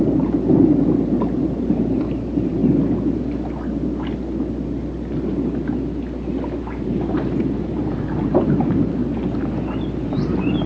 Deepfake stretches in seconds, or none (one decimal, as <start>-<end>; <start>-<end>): 0.0-2.6; 6.6-9.0; 10.0-10.7